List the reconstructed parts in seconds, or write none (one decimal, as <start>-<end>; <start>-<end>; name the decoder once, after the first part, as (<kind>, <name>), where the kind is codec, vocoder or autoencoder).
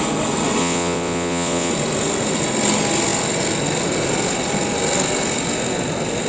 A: 0.6-1.7 (vocoder, WaveNeXt)